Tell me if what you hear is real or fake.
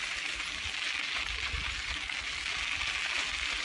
real